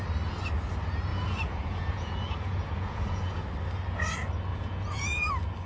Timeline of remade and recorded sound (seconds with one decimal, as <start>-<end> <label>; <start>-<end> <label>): 0.0-1.1 recorded; 1.1-3.4 remade; 3.4-4.5 recorded; 4.5-5.3 remade; 5.3-5.7 recorded